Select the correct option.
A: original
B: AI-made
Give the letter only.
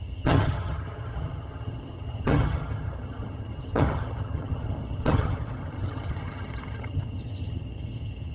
B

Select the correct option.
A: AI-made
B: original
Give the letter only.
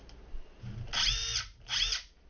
B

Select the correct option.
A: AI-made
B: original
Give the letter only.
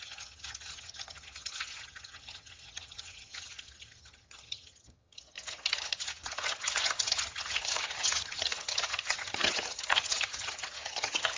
A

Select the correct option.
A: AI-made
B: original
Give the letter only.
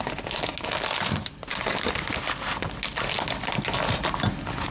B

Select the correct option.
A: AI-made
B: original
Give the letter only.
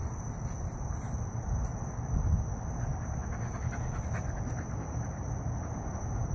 B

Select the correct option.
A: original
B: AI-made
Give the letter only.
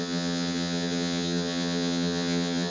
B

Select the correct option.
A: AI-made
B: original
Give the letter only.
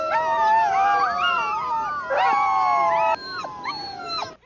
B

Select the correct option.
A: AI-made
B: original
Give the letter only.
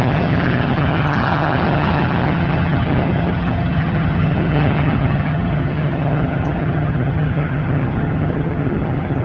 A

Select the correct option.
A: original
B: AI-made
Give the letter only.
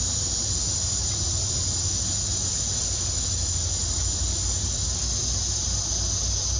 A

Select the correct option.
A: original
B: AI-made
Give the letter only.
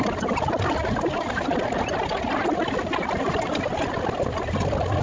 A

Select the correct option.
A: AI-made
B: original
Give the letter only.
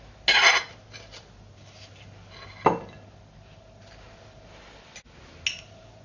B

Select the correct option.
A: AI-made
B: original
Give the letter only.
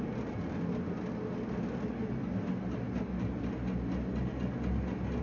B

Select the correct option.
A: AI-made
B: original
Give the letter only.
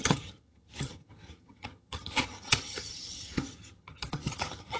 A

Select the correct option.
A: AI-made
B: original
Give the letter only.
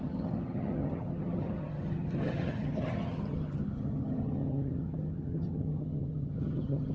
A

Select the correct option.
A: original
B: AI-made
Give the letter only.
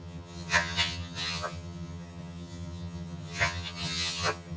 B